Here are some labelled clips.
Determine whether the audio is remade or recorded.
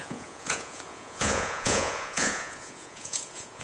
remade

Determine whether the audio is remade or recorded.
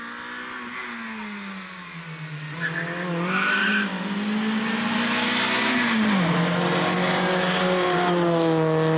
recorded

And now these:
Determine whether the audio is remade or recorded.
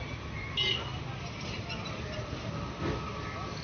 recorded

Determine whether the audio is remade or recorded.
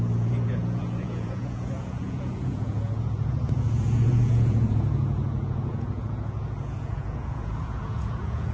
remade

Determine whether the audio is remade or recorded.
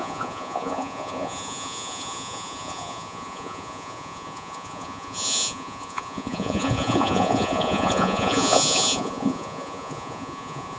remade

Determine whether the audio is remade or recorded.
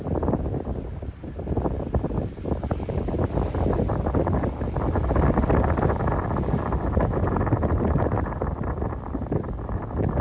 recorded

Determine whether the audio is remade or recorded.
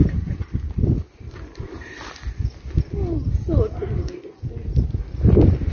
recorded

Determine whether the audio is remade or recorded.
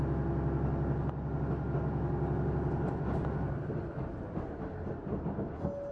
recorded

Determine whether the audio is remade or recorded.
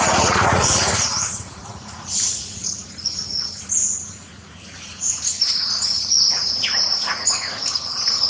remade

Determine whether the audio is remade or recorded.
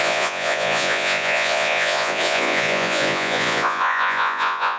remade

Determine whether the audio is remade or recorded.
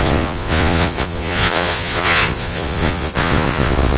remade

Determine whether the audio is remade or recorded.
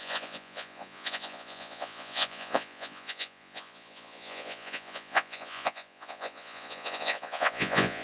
remade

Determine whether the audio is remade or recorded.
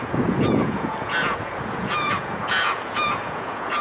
remade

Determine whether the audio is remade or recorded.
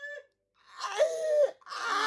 recorded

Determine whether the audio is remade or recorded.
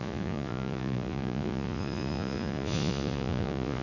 remade